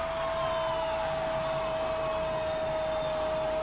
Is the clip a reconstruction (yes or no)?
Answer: no